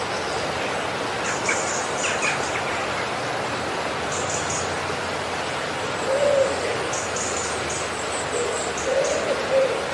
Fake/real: real